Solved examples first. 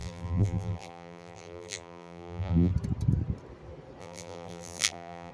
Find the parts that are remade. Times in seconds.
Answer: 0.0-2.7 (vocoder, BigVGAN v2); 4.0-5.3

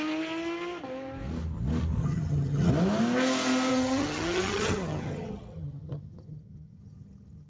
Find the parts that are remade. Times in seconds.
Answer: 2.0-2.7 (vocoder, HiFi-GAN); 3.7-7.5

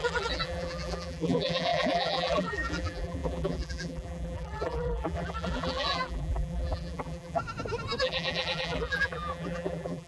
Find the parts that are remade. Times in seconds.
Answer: 0.0-7.4 (vocoder, BigVGAN v2); 8.0-10.1